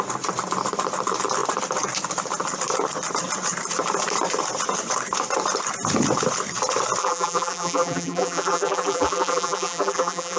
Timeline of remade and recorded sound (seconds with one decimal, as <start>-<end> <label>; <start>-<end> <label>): 0.0-7.0 recorded; 7.0-10.4 remade